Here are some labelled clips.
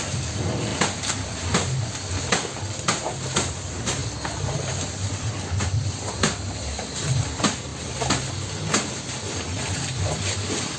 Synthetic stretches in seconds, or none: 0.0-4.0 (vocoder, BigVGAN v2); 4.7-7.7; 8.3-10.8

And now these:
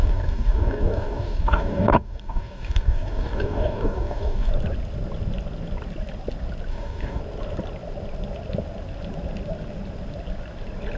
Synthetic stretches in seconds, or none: 0.0-4.5 (codec, DAC); 6.7-7.2

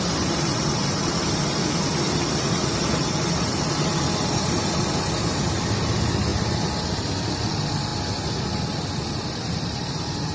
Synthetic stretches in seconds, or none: 0.0-6.3 (vocoder, BigVGAN v2); 7.3-7.9; 9.6-10.3

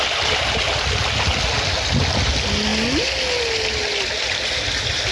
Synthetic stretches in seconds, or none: none

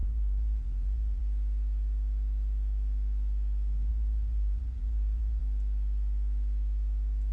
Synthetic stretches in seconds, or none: 0.0-1.2 (vocoder, BigVGAN v2); 3.9-5.4